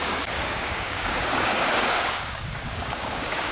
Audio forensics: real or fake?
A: fake